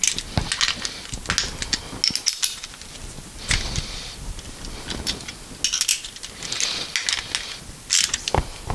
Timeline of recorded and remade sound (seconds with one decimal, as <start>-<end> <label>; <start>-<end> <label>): 0.0-8.7 recorded